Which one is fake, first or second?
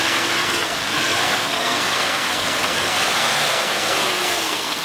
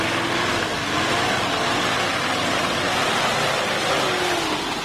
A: first